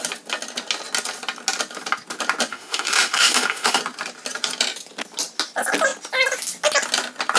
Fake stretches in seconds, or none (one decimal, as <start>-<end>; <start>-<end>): 2.5-3.8